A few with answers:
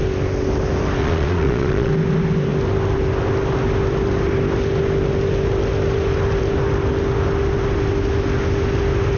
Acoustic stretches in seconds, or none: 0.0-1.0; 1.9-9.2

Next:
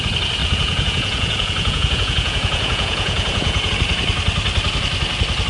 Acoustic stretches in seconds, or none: 0.0-0.4; 3.7-5.5

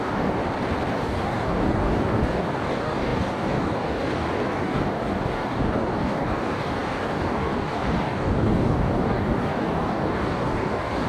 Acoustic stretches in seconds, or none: 0.4-0.9

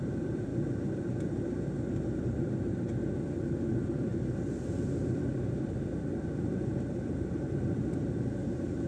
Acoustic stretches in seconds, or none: 0.5-2.2; 2.9-3.6; 4.1-5.0

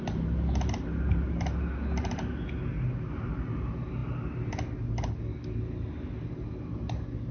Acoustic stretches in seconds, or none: 0.0-7.3